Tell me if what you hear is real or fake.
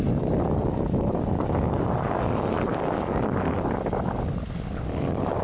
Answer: real